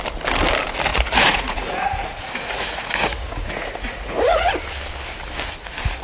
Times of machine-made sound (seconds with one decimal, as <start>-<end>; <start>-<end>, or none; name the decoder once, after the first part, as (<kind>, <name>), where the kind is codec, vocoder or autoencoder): 0.9-4.5 (vocoder, Vocos)